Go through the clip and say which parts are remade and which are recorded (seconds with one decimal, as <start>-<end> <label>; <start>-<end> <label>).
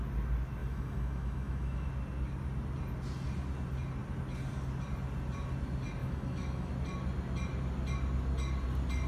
0.0-0.6 recorded; 0.6-1.9 remade; 1.9-6.0 recorded; 6.0-6.7 remade; 6.7-9.1 recorded